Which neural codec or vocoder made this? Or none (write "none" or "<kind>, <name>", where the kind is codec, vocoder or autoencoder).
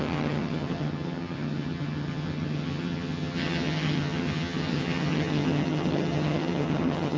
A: vocoder, HiFi-GAN